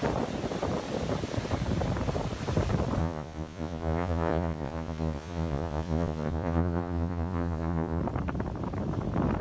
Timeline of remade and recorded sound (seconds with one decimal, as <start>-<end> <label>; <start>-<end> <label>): 0.0-3.0 recorded; 3.0-8.0 remade; 8.0-9.4 recorded